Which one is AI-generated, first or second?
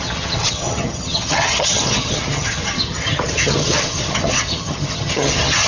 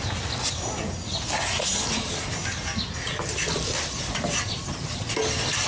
first